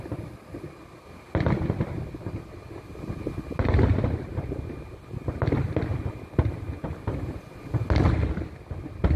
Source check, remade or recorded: recorded